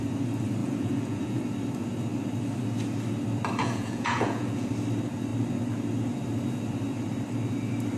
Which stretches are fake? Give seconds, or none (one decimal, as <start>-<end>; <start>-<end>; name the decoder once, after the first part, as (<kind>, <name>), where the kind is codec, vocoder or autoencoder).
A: 0.6-1.4 (vocoder, Vocos); 3.6-4.7